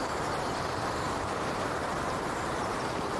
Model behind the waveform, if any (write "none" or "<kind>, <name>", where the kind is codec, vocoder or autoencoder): vocoder, BigVGAN v2